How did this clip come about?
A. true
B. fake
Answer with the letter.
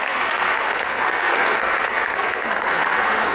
B